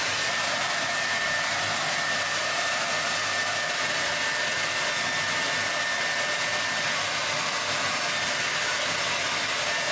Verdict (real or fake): real